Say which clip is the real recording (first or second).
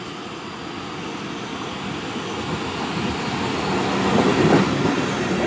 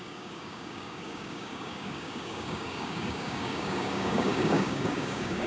first